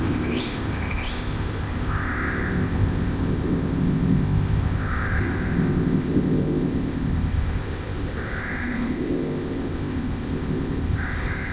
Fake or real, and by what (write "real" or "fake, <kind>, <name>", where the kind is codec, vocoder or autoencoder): fake, codec, ZipCodec